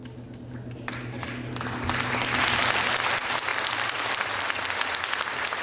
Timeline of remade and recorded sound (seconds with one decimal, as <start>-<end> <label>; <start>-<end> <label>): 0.0-3.5 recorded; 3.5-4.4 remade; 4.4-5.6 recorded